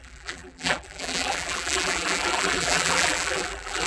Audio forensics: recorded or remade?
remade